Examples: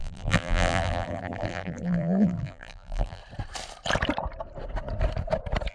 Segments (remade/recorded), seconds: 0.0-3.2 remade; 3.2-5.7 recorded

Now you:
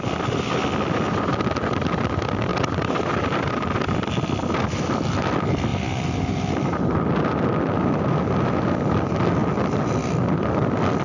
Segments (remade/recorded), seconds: 0.0-2.5 recorded; 2.5-3.1 remade; 3.1-11.0 recorded

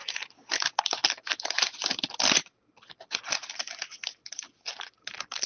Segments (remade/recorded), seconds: 0.0-5.5 recorded